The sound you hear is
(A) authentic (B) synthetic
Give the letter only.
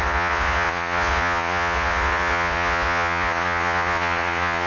B